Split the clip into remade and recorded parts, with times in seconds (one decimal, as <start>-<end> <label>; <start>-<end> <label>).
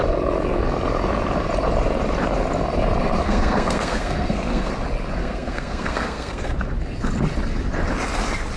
0.0-3.2 recorded; 3.2-4.7 remade; 4.7-5.2 recorded; 5.2-6.5 remade; 6.5-8.6 recorded